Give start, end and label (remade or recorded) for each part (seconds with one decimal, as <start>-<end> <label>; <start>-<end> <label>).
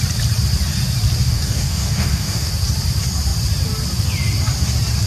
0.0-1.2 recorded; 1.2-2.5 remade; 2.5-5.1 recorded